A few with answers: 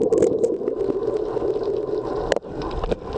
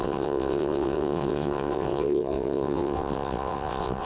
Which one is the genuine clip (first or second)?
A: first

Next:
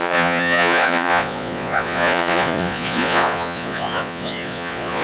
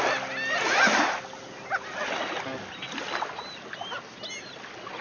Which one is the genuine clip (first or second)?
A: second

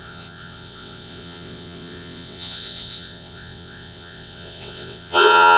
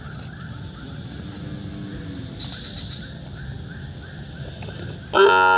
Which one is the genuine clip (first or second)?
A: second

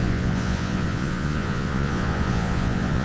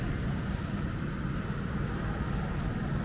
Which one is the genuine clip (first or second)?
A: second